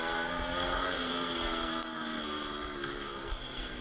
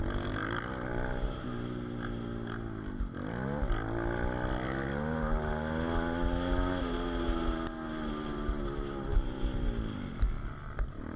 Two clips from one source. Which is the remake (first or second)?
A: first